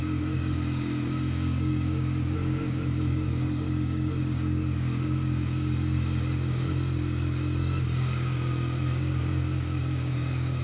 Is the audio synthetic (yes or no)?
yes